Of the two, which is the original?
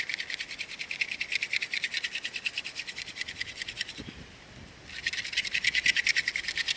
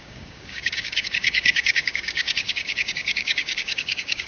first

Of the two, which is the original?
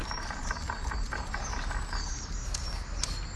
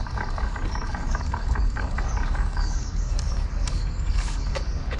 first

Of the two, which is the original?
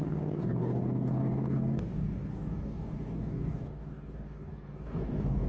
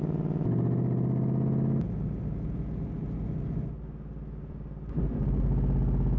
second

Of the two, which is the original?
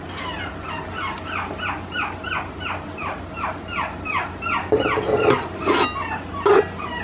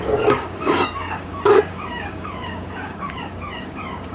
first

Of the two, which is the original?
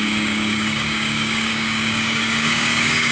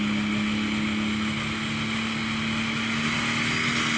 second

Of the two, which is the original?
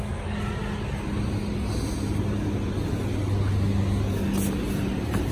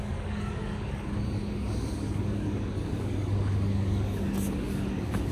first